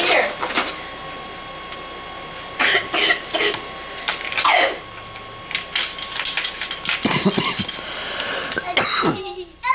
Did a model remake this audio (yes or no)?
no